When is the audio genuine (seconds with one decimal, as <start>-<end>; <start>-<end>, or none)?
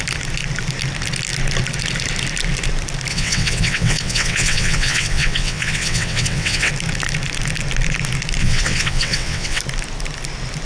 0.0-3.1; 6.7-8.4; 9.6-10.6